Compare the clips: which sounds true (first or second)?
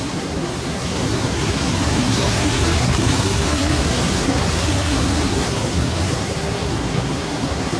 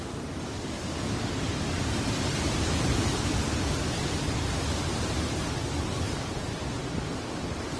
second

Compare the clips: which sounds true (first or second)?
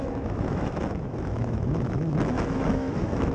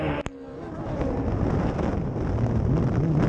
second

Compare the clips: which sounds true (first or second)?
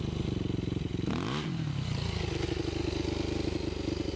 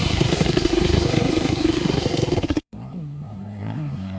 first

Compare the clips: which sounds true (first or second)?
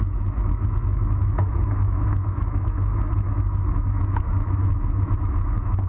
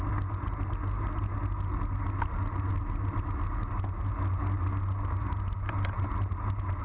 second